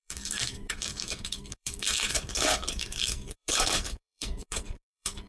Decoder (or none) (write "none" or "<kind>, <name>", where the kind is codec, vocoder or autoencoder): codec, SNAC